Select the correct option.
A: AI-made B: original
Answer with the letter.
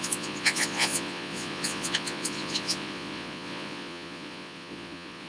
A